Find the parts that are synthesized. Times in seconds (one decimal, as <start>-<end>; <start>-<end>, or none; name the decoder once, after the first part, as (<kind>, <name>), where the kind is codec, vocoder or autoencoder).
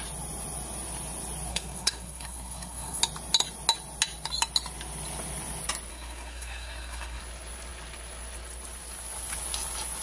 1.5-3.0 (codec, SNAC); 5.9-7.2